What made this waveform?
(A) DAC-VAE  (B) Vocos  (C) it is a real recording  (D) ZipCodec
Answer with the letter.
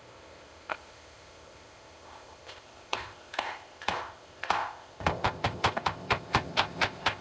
D